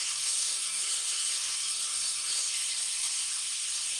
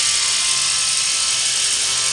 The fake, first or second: first